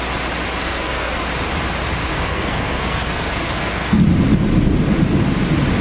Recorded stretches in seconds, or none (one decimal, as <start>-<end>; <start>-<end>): 0.0-0.6; 1.2-2.1; 4.0-5.8